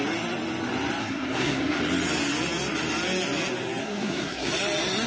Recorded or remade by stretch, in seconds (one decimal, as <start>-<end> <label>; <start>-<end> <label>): 0.0-1.0 recorded; 1.0-1.8 remade; 1.8-3.8 recorded; 3.8-4.5 remade; 4.5-5.1 recorded